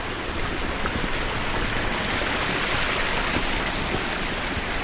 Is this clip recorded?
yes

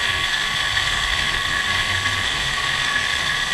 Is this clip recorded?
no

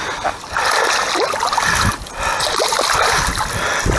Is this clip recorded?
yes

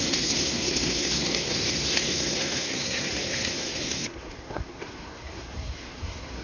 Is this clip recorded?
no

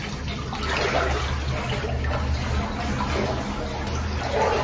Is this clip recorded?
yes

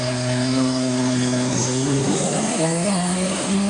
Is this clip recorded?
no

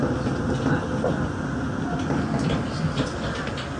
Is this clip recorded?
yes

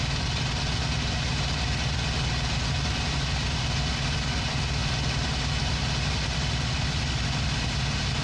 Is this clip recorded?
yes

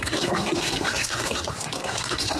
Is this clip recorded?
no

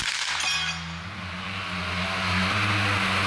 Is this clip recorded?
yes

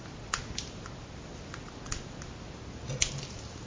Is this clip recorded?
yes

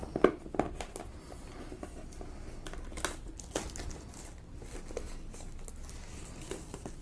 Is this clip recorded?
yes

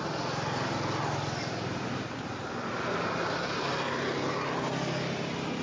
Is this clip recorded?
yes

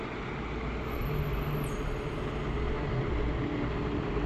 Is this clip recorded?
yes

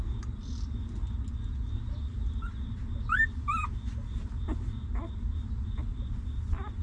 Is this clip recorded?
yes